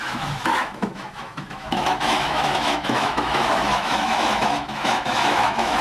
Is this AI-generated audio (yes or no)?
yes